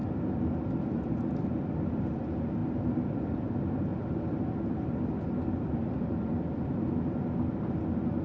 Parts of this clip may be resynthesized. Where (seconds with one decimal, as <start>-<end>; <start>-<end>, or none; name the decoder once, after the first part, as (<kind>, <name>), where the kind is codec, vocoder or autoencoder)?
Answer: none